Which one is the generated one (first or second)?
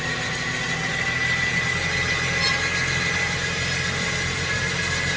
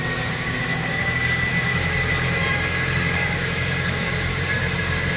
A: second